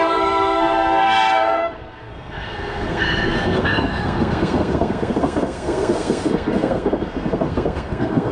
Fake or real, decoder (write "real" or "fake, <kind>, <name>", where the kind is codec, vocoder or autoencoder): fake, codec, SNAC